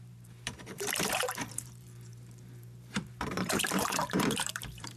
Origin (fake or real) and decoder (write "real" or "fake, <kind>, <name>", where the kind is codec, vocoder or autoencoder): fake, vocoder, BigVGAN v2